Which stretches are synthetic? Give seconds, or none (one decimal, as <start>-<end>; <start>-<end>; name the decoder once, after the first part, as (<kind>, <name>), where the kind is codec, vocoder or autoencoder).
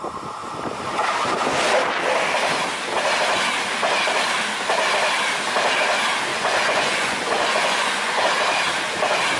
6.3-8.2 (vocoder, Vocos)